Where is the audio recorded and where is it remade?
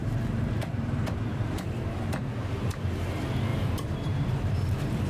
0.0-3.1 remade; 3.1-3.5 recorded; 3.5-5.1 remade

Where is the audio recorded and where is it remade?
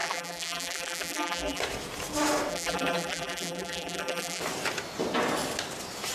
0.0-1.6 remade; 1.6-2.5 recorded; 2.5-4.4 remade; 4.4-6.1 recorded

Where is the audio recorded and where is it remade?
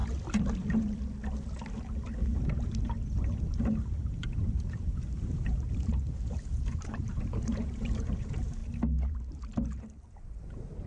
0.0-3.4 recorded; 3.4-8.6 remade; 8.6-9.1 recorded; 9.1-10.9 remade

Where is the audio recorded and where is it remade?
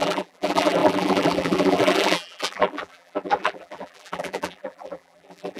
0.0-5.6 remade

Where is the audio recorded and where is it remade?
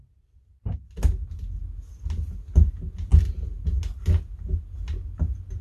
0.0-5.6 recorded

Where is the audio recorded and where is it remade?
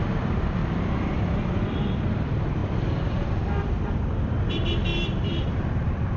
0.0-0.6 remade; 0.6-1.1 recorded; 1.1-6.2 remade